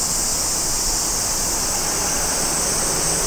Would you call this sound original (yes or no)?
yes